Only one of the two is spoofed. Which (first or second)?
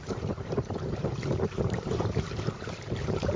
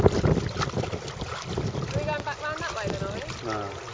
first